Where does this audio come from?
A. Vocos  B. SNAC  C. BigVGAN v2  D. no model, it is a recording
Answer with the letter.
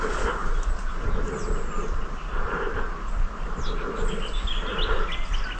D